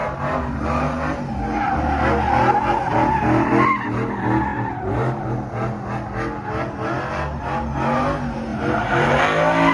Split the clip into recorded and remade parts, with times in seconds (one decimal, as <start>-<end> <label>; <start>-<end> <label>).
0.0-1.7 remade; 1.7-2.9 recorded; 2.9-3.5 remade; 3.5-4.5 recorded; 4.5-5.5 remade; 5.5-8.5 recorded; 8.5-9.2 remade; 9.2-9.7 recorded